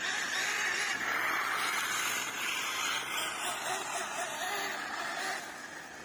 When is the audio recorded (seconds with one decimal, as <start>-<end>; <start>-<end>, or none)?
0.0-6.0